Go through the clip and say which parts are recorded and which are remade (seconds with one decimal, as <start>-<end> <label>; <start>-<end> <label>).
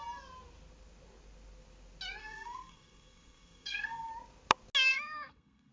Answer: 0.0-2.2 recorded; 2.2-4.1 remade; 4.1-4.9 recorded; 4.9-5.7 remade